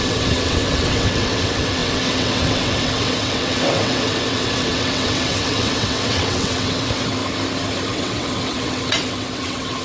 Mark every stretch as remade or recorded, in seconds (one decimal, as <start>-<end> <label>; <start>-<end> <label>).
0.0-7.2 remade; 7.2-7.9 recorded; 7.9-9.8 remade